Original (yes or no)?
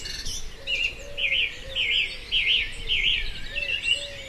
yes